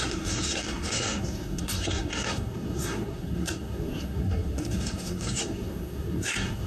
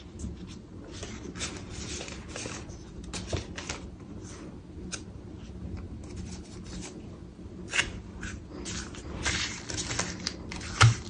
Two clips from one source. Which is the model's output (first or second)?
first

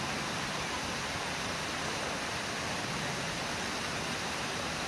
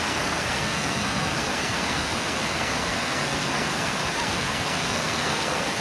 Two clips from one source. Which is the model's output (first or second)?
second